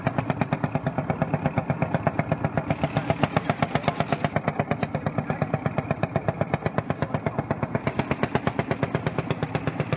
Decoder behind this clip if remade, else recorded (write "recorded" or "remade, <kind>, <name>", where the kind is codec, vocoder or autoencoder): recorded